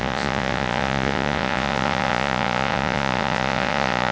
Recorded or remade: remade